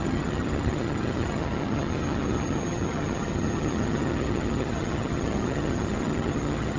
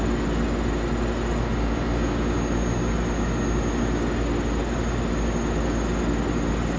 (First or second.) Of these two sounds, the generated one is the first